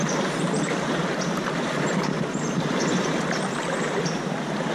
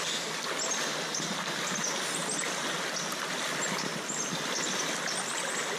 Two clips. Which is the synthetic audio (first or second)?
first